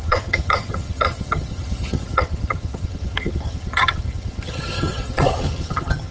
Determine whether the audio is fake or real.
fake